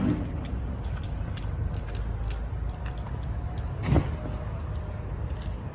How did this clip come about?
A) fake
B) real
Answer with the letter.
B